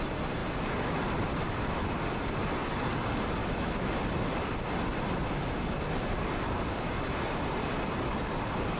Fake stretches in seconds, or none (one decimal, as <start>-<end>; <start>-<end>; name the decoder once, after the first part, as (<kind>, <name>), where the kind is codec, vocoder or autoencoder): 3.4-3.9 (autoencoder, DAC-VAE)